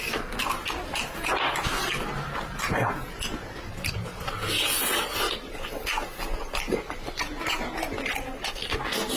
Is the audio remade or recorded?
recorded